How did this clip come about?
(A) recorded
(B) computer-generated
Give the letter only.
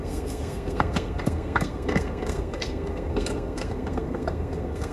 B